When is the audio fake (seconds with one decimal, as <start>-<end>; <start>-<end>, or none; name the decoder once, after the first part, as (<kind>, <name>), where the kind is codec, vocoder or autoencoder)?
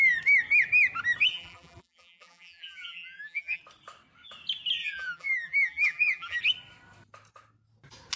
1.3-3.6 (vocoder, BigVGAN v2); 4.8-6.4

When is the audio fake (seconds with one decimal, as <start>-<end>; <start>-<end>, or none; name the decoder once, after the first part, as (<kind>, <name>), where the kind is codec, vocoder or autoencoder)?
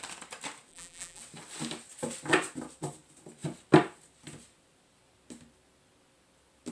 0.7-1.2 (vocoder, BigVGAN v2)